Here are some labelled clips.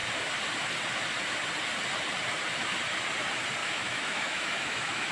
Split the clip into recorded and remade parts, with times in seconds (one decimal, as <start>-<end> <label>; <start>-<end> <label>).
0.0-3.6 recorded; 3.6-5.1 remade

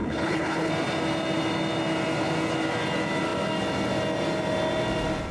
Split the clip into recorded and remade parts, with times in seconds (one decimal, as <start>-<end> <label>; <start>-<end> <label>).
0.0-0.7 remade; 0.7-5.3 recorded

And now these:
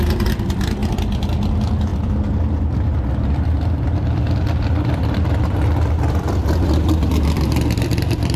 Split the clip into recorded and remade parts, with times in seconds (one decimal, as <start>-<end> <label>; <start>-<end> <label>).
0.0-8.4 remade